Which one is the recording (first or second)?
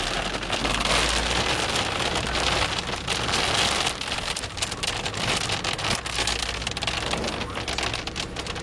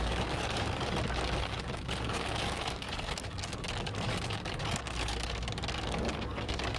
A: first